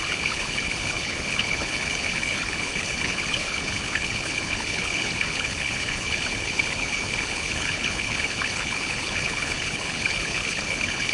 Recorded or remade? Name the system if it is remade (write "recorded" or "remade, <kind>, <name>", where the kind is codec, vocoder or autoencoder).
remade, codec, HILCodec